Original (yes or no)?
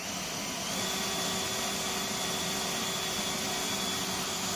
yes